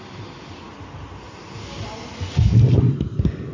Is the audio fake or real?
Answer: real